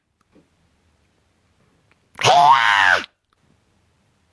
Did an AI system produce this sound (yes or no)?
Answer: no